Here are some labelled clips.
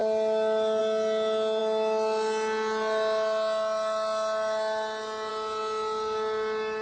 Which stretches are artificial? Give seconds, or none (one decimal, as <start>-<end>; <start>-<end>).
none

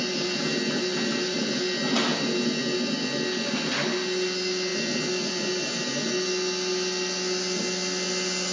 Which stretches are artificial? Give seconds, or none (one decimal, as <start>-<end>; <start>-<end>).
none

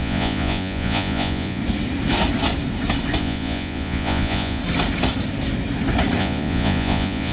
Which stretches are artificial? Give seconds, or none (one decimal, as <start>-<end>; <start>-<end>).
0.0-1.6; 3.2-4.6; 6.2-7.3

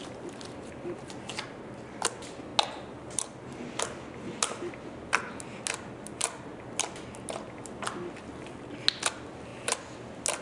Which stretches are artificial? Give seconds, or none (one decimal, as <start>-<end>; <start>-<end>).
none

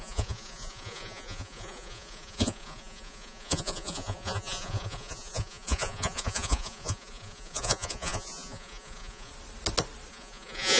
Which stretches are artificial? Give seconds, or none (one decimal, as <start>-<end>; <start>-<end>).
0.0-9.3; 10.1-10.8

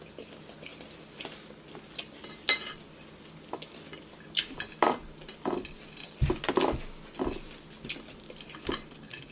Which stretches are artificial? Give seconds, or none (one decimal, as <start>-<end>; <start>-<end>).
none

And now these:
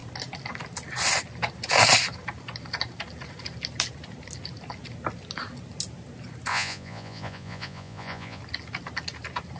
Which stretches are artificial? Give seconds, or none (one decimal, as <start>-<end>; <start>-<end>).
6.5-8.4